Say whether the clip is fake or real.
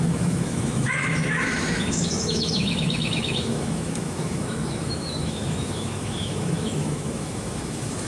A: fake